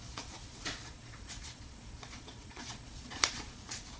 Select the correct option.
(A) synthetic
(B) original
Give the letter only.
A